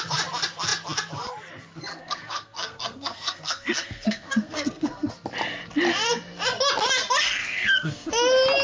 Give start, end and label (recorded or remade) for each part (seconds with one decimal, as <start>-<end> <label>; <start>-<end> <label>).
0.0-1.9 recorded; 1.9-5.1 remade; 5.1-7.4 recorded; 7.4-8.1 remade; 8.1-8.6 recorded